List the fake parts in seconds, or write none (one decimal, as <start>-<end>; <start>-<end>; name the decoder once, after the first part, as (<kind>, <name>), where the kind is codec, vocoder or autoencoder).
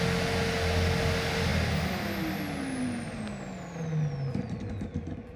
none